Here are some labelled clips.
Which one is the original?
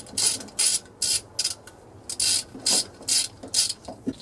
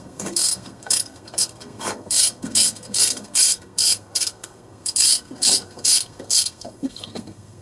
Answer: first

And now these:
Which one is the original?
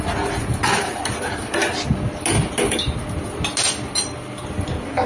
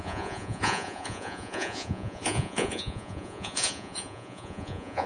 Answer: first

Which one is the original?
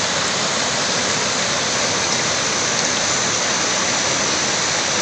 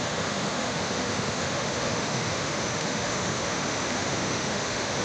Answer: first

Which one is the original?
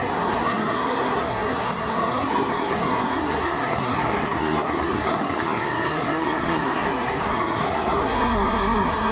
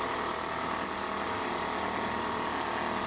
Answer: second